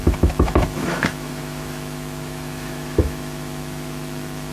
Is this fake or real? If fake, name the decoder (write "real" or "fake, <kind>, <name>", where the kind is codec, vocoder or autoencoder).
fake, autoencoder, DAC-VAE